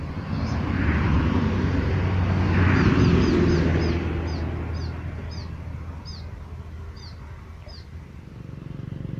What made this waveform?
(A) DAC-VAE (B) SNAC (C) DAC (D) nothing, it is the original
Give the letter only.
D